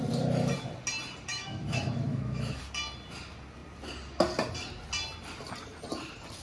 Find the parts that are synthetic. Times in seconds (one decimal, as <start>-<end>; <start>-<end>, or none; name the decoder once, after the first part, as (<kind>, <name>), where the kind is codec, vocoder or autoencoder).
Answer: 1.3-2.6 (autoencoder, DAC-VAE)